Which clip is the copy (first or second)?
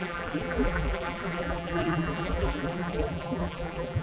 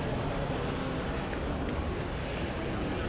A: first